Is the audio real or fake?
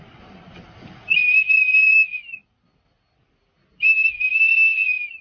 real